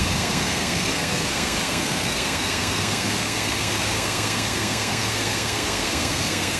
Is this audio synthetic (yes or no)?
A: yes